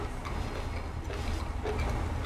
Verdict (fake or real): real